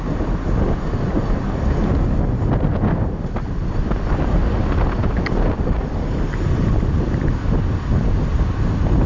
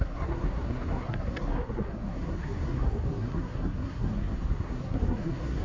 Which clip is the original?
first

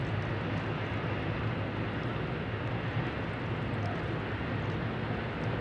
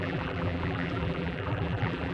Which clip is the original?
first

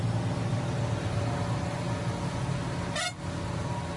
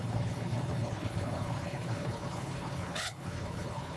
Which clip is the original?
first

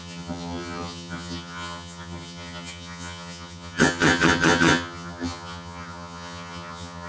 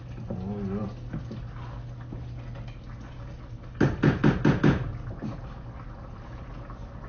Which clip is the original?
second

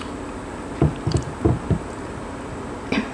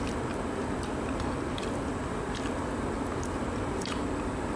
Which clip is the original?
first